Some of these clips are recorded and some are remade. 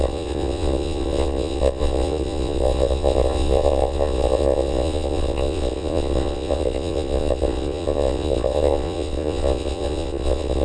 remade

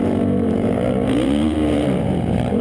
remade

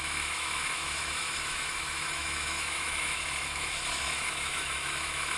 remade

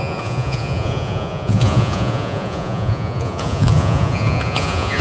remade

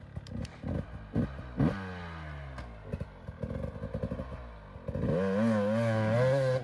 recorded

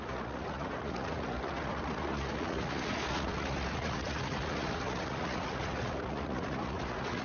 remade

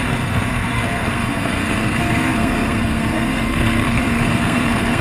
remade